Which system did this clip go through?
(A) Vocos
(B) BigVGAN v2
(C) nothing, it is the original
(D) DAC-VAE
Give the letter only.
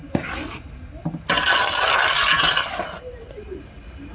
C